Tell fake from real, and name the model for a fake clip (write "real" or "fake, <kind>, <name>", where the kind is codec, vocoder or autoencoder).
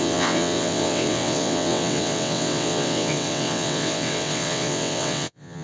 fake, vocoder, WaveNeXt